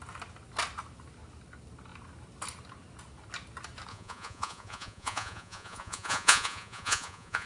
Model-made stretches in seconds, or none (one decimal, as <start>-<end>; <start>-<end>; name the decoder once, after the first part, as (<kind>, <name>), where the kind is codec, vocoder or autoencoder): 3.9-7.5 (vocoder, Vocos)